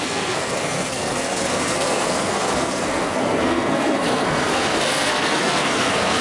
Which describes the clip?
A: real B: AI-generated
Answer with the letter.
B